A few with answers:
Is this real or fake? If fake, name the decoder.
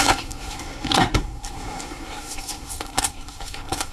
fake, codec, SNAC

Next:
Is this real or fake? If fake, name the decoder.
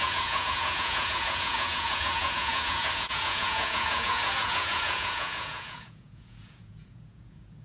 fake, vocoder, Vocos